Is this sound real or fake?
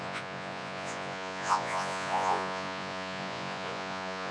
fake